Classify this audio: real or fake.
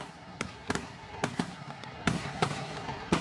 fake